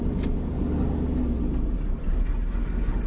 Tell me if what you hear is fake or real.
real